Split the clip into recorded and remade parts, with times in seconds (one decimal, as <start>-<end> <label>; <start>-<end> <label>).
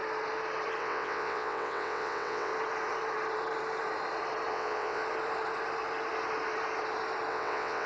0.0-0.8 recorded; 0.8-2.5 remade; 2.5-4.5 recorded; 4.5-5.0 remade; 5.0-7.3 recorded; 7.3-7.9 remade